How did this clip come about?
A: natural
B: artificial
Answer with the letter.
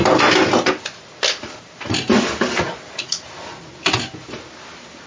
A